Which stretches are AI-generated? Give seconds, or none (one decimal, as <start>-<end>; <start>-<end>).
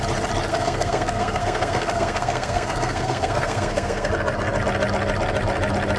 0.5-4.1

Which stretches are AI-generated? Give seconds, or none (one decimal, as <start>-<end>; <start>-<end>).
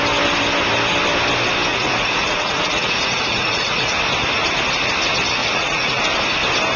1.7-4.0; 5.4-6.0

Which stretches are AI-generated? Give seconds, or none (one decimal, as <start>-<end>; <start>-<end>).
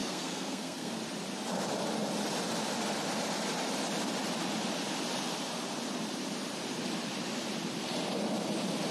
0.0-1.0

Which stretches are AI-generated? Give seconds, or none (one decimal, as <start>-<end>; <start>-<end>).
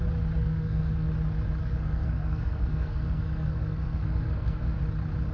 0.4-1.1; 1.6-4.8